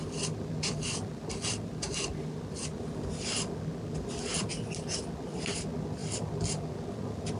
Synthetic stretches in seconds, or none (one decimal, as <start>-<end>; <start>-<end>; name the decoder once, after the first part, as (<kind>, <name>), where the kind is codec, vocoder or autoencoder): none